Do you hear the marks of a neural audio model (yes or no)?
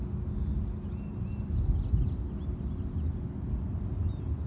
no